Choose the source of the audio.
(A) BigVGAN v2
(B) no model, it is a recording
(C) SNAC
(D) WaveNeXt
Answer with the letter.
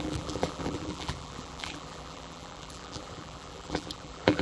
A